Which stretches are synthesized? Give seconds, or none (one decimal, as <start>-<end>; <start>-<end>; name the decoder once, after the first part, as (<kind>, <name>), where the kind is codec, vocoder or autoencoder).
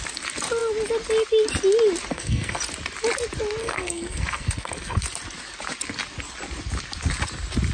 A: 2.1-2.6 (codec, SNAC); 3.6-5.0